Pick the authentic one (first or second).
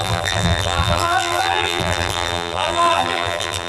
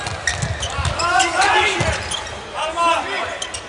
second